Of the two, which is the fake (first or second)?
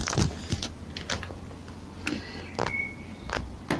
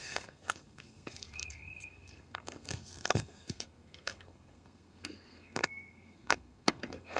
second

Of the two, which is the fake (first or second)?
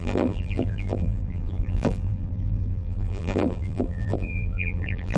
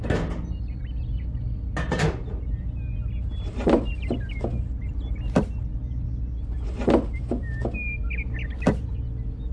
first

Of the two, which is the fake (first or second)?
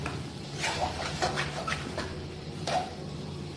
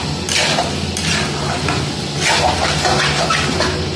first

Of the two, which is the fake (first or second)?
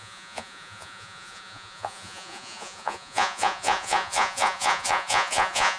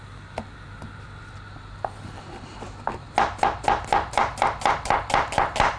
first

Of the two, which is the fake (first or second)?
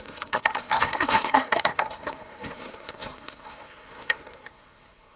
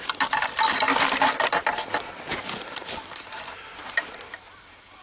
first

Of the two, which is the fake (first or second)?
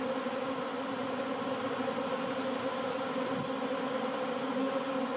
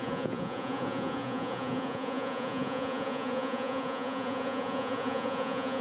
second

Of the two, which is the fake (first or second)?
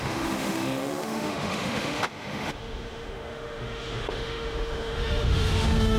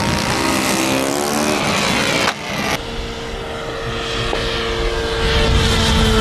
first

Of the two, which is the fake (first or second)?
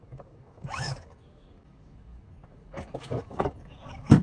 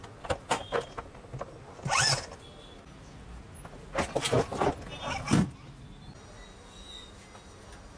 first